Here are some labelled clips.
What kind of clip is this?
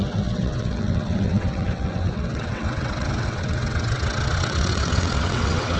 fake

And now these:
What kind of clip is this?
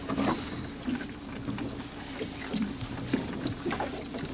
real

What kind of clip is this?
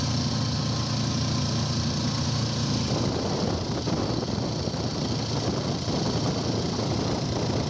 real